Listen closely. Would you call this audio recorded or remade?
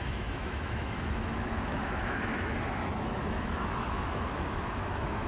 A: remade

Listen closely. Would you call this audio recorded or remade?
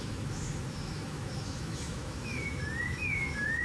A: remade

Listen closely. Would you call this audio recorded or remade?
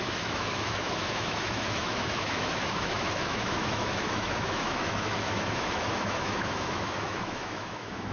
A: remade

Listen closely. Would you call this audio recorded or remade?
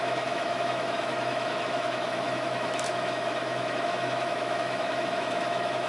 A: remade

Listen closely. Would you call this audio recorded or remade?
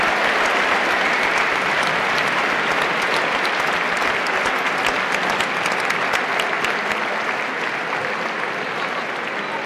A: recorded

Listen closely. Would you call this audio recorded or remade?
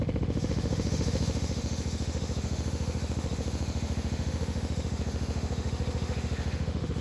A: remade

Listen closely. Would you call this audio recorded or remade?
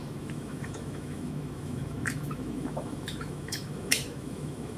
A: remade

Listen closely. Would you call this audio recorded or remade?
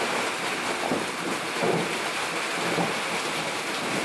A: recorded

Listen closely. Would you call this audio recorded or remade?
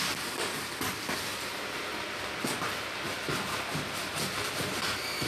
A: recorded